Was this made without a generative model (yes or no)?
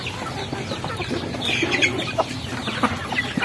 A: yes